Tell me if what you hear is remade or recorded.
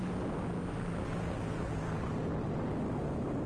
recorded